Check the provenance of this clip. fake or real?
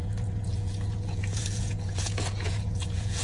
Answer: fake